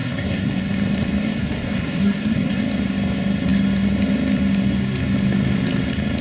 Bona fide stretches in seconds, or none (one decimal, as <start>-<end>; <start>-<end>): 0.6-1.2; 2.6-6.2